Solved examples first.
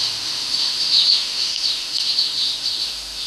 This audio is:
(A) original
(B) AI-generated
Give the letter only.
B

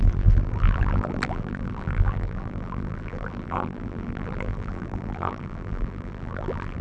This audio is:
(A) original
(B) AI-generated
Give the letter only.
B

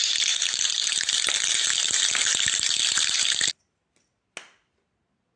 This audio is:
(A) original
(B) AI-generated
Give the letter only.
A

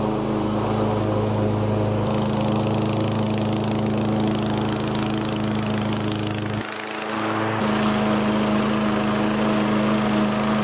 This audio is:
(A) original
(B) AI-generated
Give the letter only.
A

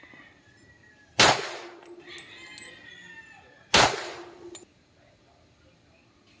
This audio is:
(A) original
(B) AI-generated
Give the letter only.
A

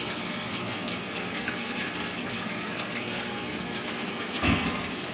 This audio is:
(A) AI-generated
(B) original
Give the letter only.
A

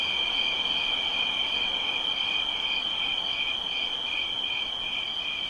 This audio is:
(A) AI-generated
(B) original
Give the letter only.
B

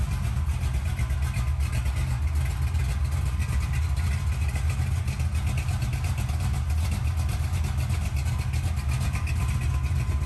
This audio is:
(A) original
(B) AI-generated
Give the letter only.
A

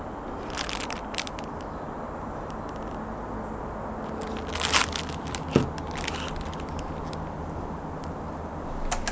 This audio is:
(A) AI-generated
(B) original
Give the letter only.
B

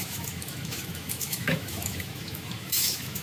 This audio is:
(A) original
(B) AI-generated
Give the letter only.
B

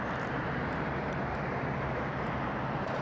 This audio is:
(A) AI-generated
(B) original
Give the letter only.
A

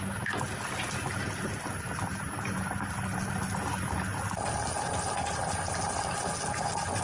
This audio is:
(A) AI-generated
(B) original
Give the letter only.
B